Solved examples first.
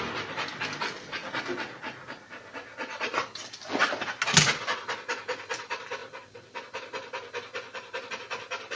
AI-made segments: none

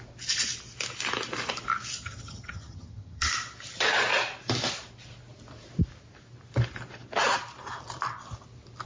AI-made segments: 2.0-3.3 (vocoder, HiFi-GAN)